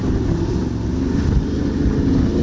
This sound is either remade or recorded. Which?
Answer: recorded